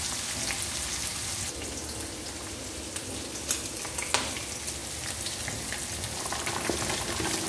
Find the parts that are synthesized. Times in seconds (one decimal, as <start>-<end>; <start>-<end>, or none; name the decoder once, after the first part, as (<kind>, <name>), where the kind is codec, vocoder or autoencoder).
none